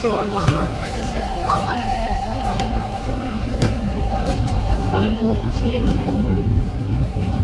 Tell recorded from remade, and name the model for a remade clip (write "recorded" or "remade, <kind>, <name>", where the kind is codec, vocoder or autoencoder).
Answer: remade, codec, SNAC